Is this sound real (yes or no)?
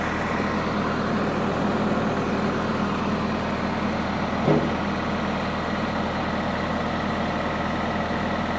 yes